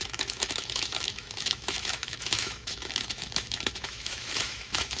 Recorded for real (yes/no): no